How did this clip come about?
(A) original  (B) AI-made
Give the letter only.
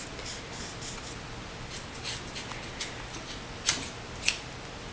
A